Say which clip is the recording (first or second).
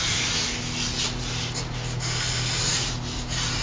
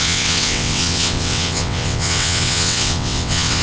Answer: first